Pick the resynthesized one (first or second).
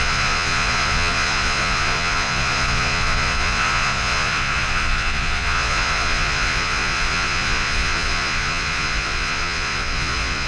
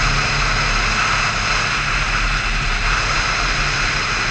first